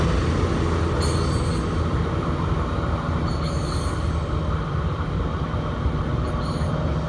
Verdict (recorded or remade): recorded